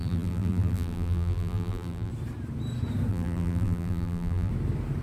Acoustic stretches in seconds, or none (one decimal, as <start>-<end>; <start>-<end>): 2.1-3.1; 4.5-5.0